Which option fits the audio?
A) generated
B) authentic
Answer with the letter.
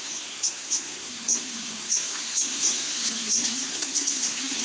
A